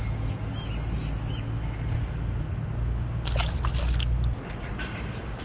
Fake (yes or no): no